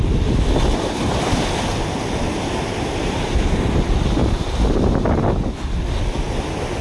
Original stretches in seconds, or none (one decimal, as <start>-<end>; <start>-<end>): 0.0-6.8